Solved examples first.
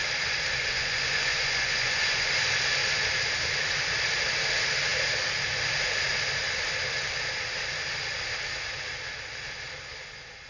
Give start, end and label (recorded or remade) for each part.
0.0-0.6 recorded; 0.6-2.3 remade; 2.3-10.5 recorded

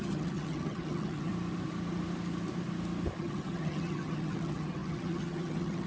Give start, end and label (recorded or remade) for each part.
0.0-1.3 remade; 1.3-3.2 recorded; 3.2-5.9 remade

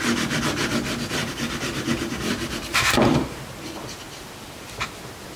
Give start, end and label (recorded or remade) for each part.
0.0-1.2 recorded; 1.2-3.6 remade; 3.6-5.4 recorded